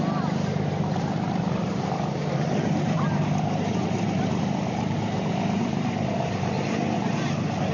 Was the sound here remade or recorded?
remade